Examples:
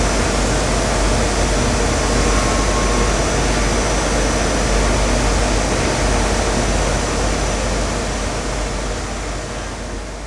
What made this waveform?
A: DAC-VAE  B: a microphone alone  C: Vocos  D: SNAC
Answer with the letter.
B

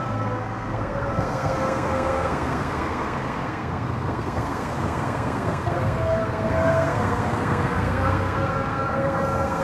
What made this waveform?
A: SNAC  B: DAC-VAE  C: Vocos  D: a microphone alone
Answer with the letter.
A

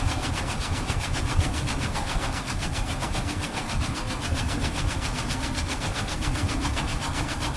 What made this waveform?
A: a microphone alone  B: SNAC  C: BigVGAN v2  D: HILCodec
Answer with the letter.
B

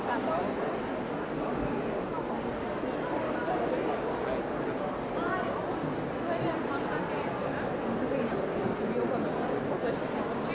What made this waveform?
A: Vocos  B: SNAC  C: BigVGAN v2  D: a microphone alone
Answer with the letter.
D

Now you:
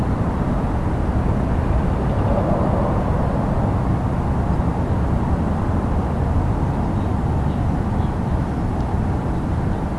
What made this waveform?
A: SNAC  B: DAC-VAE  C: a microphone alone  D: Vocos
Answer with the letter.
C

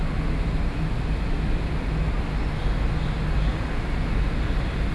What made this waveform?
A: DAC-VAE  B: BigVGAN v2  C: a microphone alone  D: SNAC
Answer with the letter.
C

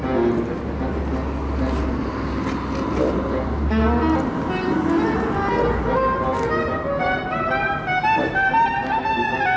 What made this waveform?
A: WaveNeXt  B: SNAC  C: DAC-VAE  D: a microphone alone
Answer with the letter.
D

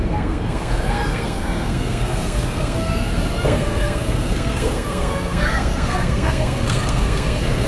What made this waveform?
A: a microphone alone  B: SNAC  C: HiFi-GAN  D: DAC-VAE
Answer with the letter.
B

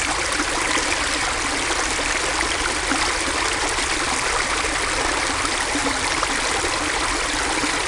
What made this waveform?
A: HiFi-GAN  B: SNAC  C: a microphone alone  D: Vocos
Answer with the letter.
C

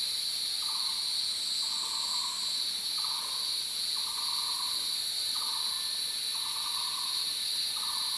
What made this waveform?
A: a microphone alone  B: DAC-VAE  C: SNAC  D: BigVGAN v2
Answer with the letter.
A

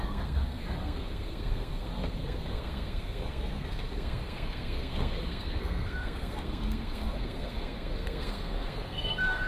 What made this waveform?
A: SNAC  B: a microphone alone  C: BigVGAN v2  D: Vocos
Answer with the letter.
A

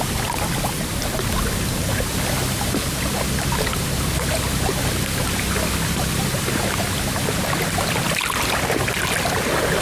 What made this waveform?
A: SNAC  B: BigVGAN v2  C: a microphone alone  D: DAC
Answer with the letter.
C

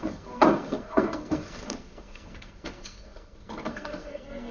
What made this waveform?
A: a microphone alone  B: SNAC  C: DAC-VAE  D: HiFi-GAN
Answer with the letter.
B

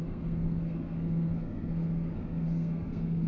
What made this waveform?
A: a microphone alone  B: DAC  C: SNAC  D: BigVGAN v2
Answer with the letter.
C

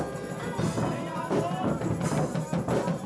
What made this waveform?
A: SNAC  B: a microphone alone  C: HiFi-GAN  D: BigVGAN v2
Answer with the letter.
B